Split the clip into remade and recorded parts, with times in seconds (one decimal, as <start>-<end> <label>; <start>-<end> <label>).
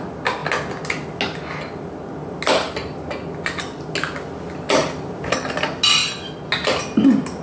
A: 0.0-7.4 recorded